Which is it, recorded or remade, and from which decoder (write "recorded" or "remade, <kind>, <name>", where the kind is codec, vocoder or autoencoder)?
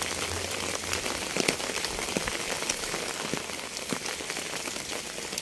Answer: recorded